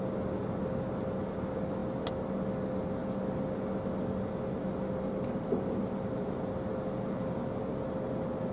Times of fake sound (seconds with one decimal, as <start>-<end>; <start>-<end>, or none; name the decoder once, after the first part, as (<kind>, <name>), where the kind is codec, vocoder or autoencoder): none